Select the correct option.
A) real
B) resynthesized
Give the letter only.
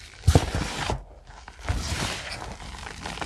A